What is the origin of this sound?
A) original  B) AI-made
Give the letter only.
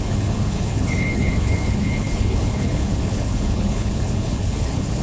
B